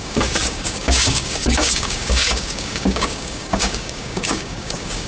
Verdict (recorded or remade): remade